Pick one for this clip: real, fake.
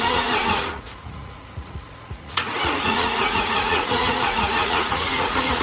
fake